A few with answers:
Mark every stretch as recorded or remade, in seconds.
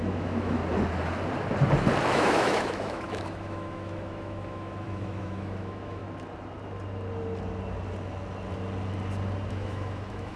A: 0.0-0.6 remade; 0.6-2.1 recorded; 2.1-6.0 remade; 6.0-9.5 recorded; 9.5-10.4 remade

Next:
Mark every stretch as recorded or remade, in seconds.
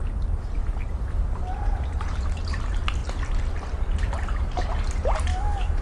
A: 0.0-5.3 recorded; 5.3-5.8 remade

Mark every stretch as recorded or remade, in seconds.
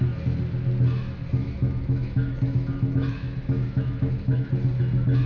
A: 0.0-1.4 recorded; 1.4-4.5 remade; 4.5-5.3 recorded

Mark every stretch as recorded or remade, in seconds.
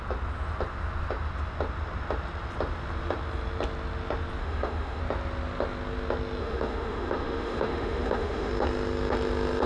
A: 0.0-4.4 recorded; 4.4-5.0 remade; 5.0-6.4 recorded; 6.4-8.5 remade; 8.5-9.7 recorded